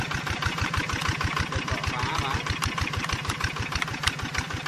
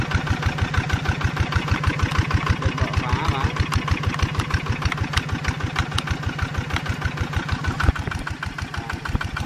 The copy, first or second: first